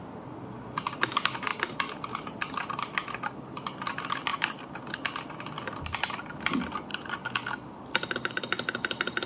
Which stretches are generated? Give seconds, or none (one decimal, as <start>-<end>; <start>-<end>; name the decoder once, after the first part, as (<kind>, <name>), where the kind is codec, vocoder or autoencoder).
none